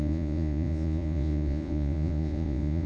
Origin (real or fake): fake